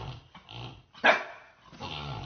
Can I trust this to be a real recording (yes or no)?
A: yes